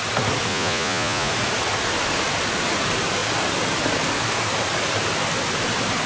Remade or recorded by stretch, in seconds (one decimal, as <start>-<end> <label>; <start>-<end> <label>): 0.0-0.5 recorded; 0.5-1.3 remade; 1.3-6.1 recorded